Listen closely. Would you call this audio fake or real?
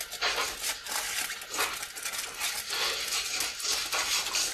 real